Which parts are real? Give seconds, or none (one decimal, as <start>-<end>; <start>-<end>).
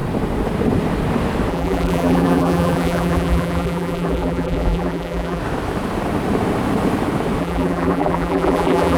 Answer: 0.0-1.5; 5.4-7.4